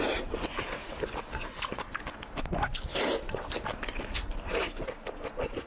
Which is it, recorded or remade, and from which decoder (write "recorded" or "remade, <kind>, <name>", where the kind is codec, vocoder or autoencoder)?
recorded